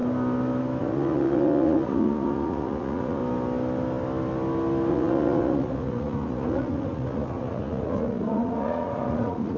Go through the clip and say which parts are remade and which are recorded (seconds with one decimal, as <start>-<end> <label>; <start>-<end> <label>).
0.0-0.8 recorded; 0.8-3.2 remade; 3.2-4.9 recorded; 4.9-9.6 remade